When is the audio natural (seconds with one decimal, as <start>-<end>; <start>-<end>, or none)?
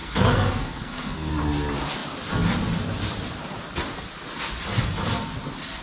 1.3-5.8